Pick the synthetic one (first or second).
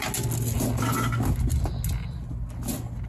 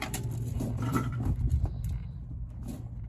second